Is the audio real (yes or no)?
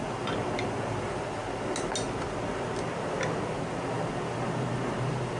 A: yes